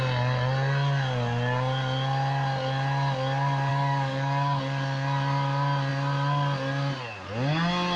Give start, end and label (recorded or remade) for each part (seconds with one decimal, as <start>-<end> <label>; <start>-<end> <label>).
0.0-3.7 recorded; 3.7-4.6 remade; 4.6-8.0 recorded